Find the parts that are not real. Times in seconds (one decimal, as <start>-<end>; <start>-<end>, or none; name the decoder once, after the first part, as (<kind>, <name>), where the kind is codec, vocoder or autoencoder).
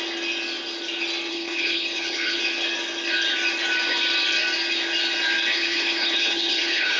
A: 1.3-2.4 (codec, HILCodec); 5.5-7.0